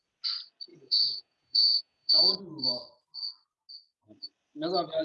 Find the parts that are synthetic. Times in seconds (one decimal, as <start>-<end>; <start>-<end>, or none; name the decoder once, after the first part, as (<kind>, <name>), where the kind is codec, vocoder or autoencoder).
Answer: 0.7-2.4 (vocoder, Vocos)